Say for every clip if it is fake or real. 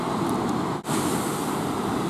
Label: real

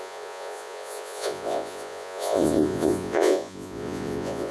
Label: fake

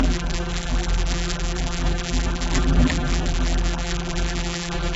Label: fake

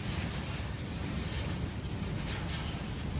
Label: real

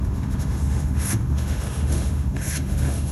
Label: fake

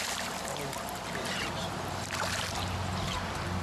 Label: real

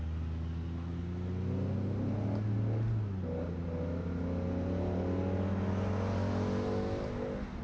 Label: real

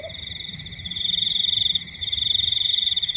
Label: fake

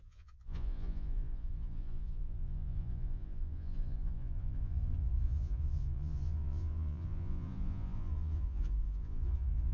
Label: fake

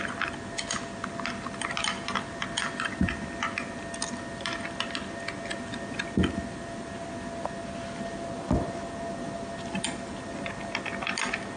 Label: fake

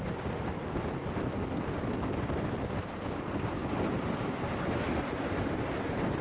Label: real